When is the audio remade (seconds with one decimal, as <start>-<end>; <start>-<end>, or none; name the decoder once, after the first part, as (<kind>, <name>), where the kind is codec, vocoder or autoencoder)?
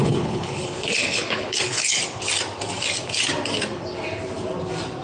0.0-2.0 (codec, HILCodec)